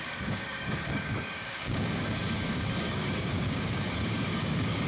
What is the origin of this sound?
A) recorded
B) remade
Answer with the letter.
B